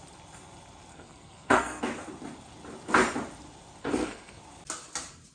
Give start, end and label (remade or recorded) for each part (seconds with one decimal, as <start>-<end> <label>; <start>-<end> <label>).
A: 0.0-0.9 recorded; 0.9-1.8 remade; 1.8-3.8 recorded; 3.8-4.4 remade; 4.4-5.3 recorded